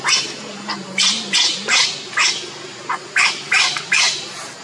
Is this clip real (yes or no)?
yes